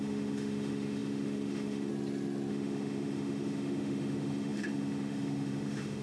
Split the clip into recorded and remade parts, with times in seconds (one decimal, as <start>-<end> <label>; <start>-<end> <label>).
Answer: 0.0-1.9 remade; 1.9-2.5 recorded; 2.5-6.0 remade